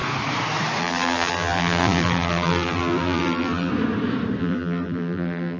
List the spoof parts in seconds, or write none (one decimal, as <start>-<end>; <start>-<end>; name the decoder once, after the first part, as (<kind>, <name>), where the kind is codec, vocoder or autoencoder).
0.8-3.7 (vocoder, BigVGAN v2); 4.4-5.6

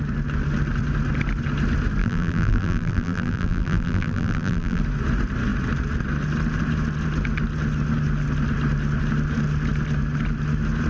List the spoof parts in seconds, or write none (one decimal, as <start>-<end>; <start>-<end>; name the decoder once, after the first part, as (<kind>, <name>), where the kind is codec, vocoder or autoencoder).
2.0-4.8 (vocoder, BigVGAN v2)

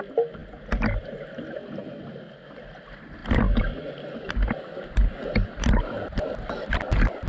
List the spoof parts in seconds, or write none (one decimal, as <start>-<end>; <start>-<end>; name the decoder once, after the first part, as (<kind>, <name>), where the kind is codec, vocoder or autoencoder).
none

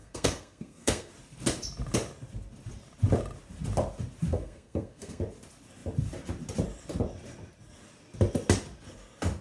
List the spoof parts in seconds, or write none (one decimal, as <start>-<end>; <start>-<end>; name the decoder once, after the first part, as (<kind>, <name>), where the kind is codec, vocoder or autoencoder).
0.0-1.1 (codec, SNAC); 4.3-5.2

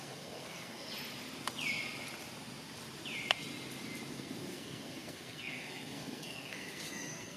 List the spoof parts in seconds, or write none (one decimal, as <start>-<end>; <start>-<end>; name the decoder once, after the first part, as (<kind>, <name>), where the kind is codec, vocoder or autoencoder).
0.0-0.9 (codec, SNAC); 4.1-7.4